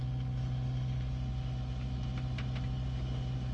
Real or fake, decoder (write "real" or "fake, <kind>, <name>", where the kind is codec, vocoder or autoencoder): real